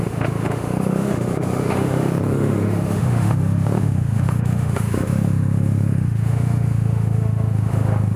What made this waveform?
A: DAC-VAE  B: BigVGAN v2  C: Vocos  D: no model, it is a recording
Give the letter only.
A